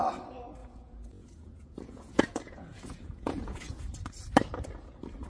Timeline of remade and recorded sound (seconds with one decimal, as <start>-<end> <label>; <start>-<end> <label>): 0.0-0.6 recorded; 0.6-3.8 remade; 3.8-5.3 recorded